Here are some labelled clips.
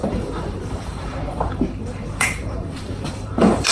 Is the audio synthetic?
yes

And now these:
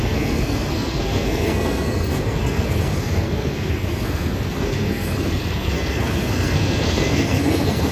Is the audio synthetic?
yes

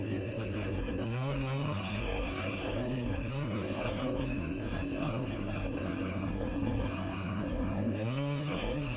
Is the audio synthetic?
yes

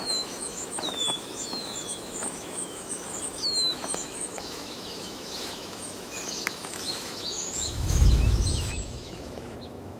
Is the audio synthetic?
yes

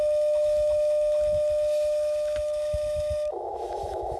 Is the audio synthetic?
yes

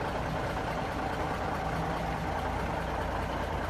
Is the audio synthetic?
no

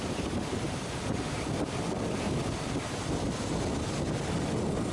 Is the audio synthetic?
no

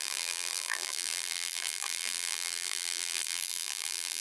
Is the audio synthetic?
yes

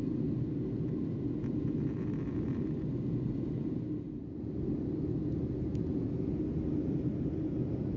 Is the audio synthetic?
no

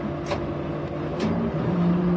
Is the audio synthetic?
no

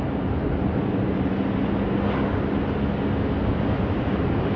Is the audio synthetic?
no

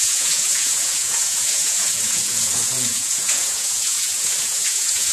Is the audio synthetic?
yes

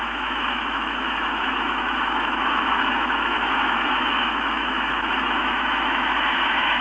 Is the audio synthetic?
yes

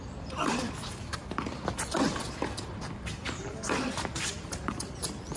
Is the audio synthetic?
yes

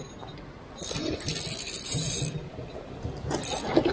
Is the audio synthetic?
no